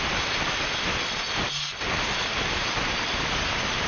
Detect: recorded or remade recorded